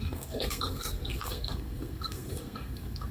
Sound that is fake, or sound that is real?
fake